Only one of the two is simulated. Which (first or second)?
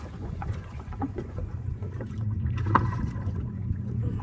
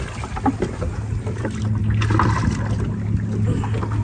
first